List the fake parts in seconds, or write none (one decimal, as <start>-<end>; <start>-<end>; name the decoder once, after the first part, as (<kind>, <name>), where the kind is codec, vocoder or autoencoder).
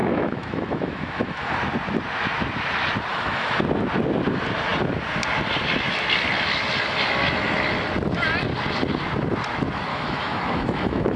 0.0-1.5 (autoencoder, DAC-VAE); 3.1-3.6; 9.9-11.2